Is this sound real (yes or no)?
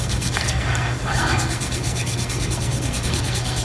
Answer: no